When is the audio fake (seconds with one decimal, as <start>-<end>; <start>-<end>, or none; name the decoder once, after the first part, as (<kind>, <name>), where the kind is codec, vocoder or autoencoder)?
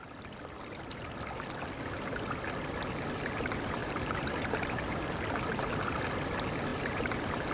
3.8-5.1 (vocoder, BigVGAN v2); 6.7-7.5